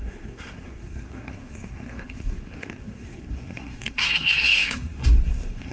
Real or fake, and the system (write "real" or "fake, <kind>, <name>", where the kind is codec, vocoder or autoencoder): fake, codec, SNAC